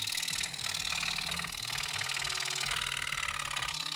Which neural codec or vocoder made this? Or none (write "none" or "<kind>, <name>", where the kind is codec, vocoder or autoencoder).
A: none